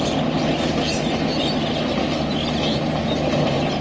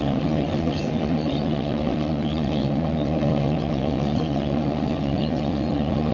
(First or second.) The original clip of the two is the first